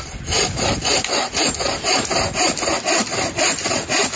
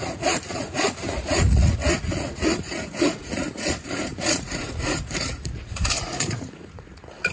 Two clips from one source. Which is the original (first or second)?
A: first